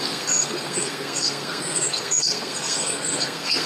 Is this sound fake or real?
fake